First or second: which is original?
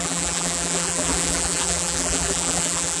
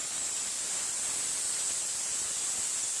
second